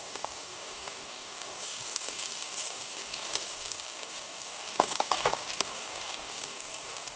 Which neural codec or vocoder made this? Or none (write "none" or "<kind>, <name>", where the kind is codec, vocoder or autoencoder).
codec, DAC